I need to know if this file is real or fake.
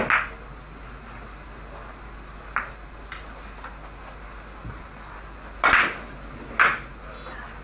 real